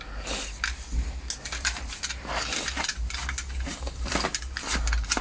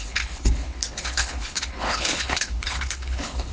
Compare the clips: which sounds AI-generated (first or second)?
second